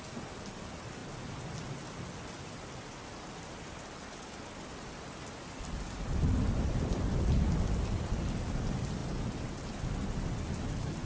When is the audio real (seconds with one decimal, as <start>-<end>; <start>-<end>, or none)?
0.0-11.1